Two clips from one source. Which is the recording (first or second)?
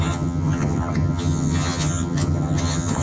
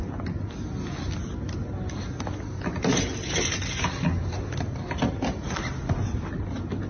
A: second